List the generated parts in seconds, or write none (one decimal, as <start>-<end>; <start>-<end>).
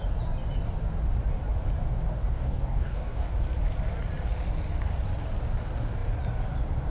2.1-3.3